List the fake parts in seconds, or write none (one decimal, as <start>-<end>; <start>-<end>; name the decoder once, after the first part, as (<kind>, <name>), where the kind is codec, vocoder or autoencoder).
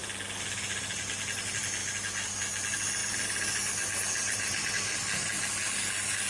none